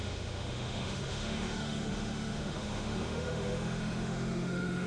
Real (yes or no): no